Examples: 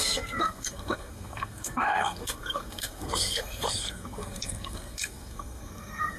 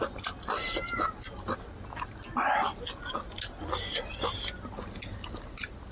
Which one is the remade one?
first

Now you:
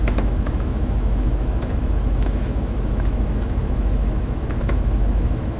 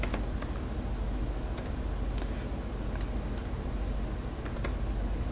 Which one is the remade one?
first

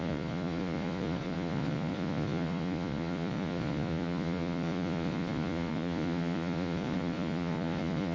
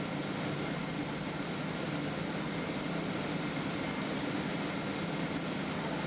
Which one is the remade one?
first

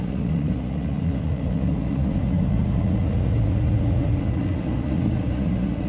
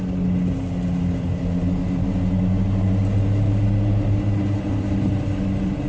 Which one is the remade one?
first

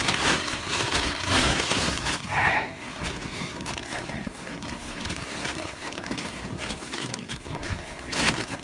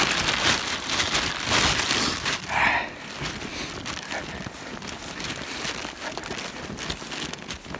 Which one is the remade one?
first